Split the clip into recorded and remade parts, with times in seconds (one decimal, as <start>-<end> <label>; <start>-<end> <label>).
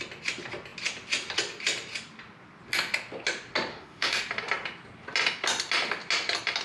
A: 0.0-3.7 recorded; 3.7-4.2 remade; 4.2-6.6 recorded